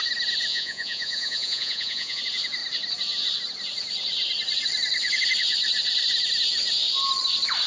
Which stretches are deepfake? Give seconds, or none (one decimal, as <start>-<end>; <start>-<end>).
0.5-2.2